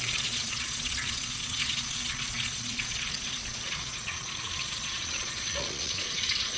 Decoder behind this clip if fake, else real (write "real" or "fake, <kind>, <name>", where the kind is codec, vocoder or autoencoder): fake, vocoder, Vocos